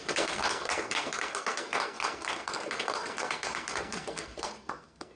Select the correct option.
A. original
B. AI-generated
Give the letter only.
B